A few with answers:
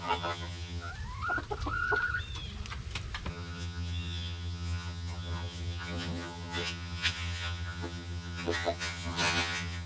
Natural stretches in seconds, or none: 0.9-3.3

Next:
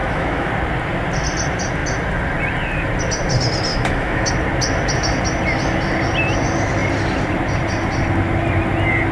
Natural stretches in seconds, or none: 0.5-3.7; 4.3-9.1

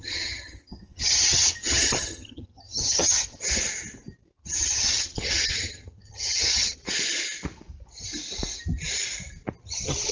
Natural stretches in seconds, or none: 3.3-4.4; 6.8-9.6

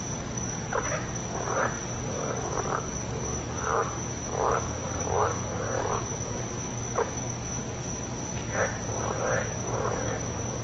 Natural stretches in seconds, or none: 1.2-2.1; 7.6-9.4